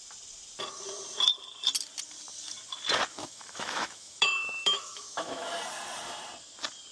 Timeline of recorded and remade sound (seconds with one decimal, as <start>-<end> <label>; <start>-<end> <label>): 0.0-3.1 recorded; 3.1-5.6 remade; 5.6-6.9 recorded